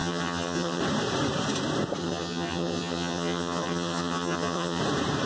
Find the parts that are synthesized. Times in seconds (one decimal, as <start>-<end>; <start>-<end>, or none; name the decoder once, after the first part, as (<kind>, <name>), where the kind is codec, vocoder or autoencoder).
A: 0.0-0.8 (vocoder, HiFi-GAN); 2.0-4.8